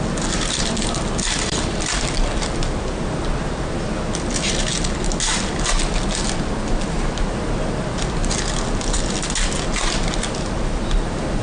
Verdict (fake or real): real